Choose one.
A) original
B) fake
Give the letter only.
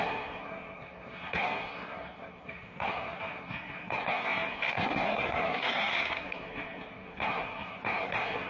B